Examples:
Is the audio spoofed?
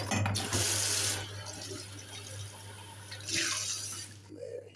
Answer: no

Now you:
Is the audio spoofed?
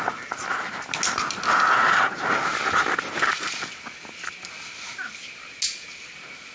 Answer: no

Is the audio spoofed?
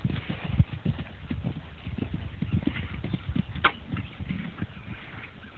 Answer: no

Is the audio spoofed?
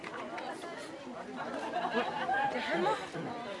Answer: no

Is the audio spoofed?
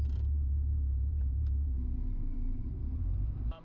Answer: yes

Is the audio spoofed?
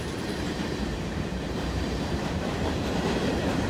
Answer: yes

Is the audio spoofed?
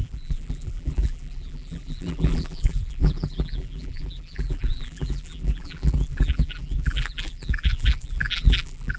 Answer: yes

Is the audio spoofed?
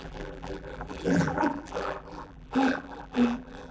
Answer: yes